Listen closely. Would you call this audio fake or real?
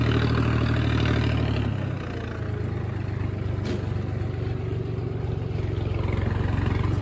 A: real